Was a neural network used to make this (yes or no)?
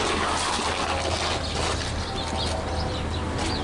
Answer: no